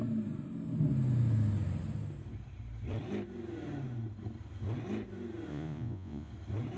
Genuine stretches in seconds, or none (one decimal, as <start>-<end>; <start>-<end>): 0.0-5.5; 6.3-6.8

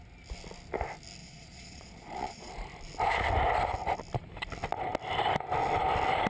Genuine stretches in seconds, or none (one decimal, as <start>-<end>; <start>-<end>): 0.0-1.2; 2.5-6.3